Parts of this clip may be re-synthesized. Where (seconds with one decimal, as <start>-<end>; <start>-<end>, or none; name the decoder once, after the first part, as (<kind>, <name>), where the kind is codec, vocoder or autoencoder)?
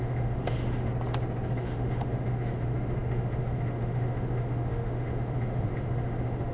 0.0-0.9 (autoencoder, DAC-VAE); 1.6-6.5